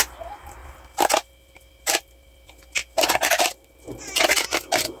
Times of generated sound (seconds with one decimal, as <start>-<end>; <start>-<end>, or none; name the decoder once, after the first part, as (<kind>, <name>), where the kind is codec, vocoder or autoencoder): 0.6-1.3 (vocoder, BigVGAN v2)